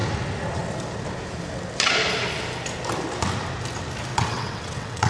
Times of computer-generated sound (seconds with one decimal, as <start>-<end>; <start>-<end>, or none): 4.1-5.1